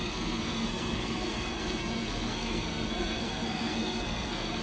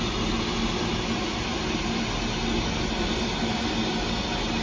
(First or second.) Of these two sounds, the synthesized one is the first